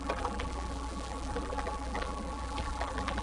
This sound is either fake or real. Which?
fake